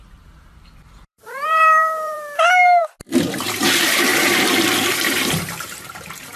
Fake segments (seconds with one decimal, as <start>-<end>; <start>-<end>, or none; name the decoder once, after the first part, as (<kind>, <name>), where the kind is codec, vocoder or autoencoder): 0.0-2.8 (vocoder, BigVGAN v2); 3.4-6.4